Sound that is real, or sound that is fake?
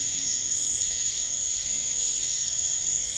fake